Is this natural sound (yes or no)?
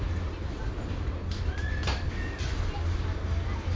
yes